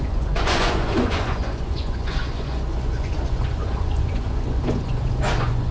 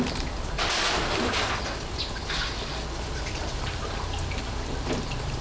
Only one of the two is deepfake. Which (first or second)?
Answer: first